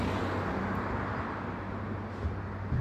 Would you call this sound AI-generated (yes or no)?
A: no